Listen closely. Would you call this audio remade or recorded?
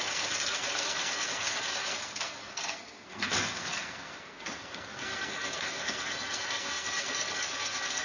remade